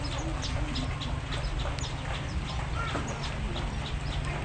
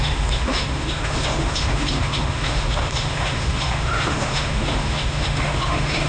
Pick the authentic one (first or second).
first